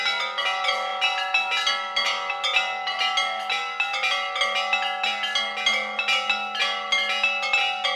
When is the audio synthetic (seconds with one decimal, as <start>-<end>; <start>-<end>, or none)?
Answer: none